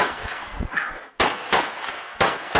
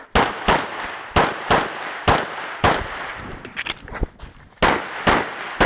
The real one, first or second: second